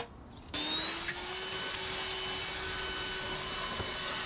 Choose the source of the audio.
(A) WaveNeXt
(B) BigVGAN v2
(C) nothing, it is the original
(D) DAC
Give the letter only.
C